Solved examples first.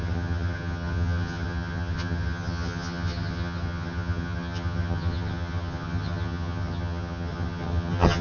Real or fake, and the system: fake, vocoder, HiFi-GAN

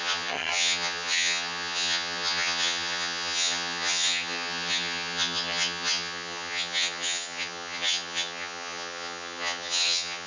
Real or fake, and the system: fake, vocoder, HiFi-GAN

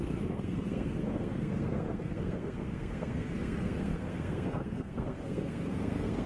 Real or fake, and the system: fake, codec, SNAC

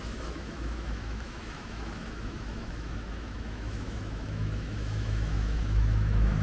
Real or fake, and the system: fake, autoencoder, DAC-VAE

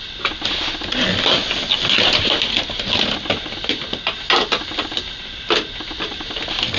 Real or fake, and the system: real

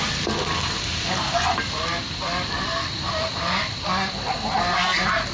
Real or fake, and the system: real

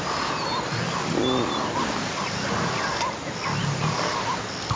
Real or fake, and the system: real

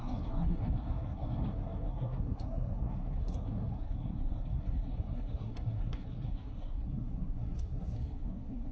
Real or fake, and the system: fake, codec, SNAC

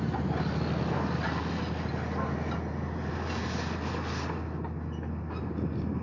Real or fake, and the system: real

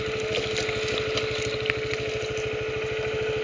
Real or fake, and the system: real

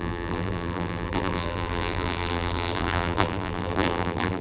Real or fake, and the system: fake, vocoder, BigVGAN v2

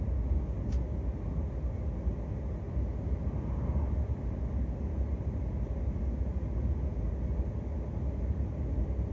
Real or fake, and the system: real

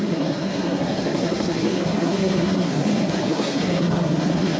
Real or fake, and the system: fake, codec, SNAC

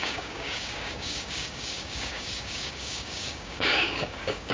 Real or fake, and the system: fake, codec, DAC